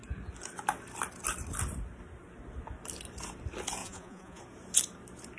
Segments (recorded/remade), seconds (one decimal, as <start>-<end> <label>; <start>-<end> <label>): 0.0-3.8 recorded; 3.8-4.4 remade; 4.4-5.4 recorded